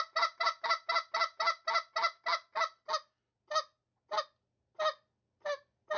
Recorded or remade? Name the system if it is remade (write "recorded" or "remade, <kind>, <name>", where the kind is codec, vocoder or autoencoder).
recorded